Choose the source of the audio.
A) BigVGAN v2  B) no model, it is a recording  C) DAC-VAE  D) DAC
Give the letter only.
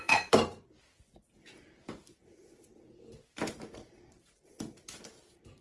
A